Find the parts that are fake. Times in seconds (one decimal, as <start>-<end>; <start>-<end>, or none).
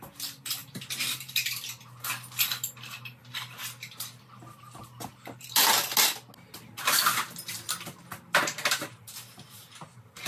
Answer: none